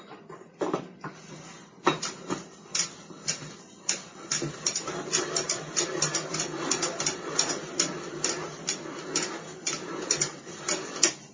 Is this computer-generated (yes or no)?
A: no